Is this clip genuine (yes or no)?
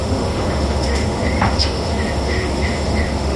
no